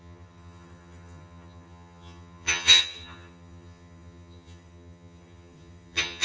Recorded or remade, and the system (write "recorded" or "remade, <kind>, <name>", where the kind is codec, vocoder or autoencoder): remade, vocoder, HiFi-GAN